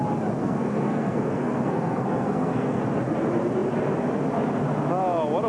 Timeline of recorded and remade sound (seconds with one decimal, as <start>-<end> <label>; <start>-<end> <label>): 0.0-0.4 recorded; 0.4-2.8 remade; 2.8-5.5 recorded